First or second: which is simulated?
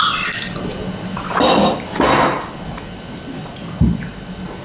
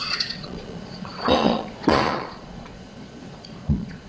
second